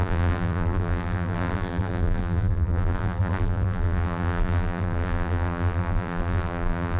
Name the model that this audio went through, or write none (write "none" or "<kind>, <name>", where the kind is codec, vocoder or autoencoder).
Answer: vocoder, BigVGAN v2